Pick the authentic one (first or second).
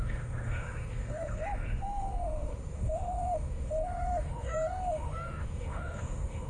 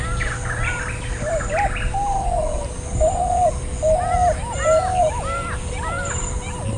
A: second